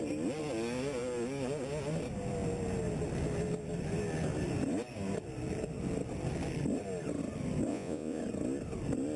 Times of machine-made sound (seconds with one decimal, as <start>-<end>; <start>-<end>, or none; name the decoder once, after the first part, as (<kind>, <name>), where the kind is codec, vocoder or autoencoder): 7.7-8.2 (vocoder, Vocos)